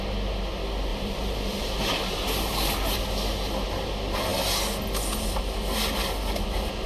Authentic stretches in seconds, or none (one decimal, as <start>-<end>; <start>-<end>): 0.0-0.9; 3.0-6.9